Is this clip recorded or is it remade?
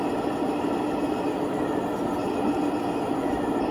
recorded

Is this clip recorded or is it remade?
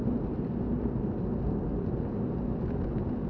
recorded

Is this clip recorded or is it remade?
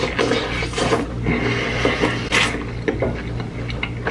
recorded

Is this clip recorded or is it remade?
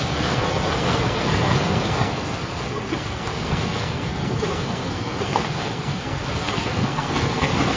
remade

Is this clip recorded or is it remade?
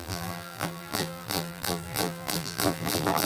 remade